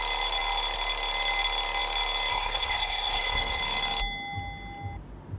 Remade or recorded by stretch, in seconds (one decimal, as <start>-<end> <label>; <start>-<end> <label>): 0.0-2.3 recorded; 2.3-3.6 remade; 3.6-5.4 recorded